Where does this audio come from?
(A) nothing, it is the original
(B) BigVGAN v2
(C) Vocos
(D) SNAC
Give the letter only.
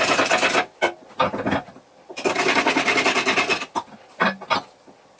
A